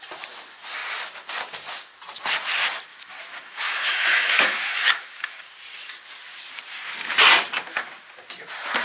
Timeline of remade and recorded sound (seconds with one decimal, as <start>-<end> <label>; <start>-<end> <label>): 0.0-2.9 recorded; 2.9-5.4 remade; 5.4-8.8 recorded